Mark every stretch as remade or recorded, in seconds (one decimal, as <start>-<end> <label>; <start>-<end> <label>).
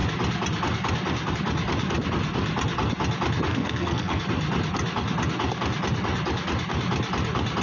0.0-3.5 recorded; 3.5-4.2 remade; 4.2-7.6 recorded